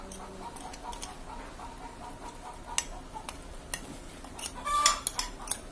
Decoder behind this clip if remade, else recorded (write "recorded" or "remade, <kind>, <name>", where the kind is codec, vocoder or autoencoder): recorded